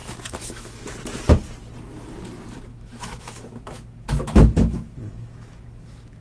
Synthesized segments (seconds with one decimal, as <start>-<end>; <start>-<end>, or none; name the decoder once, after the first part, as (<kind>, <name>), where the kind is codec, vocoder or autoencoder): 0.0-0.9 (autoencoder, DAC-VAE); 2.7-6.2